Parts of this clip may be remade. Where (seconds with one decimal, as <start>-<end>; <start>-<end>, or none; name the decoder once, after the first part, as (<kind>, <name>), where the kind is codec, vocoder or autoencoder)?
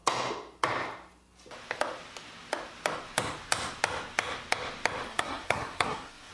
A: 5.1-6.3 (codec, SNAC)